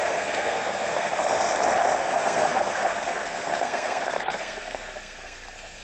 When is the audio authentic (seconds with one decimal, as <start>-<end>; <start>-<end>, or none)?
1.1-2.0